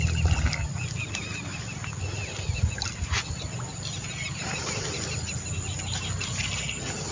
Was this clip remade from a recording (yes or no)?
no